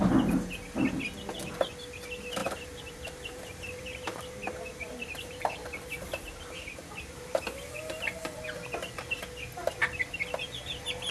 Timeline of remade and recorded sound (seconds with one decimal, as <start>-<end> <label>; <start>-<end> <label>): 0.0-2.4 recorded; 2.4-7.4 remade; 7.4-11.1 recorded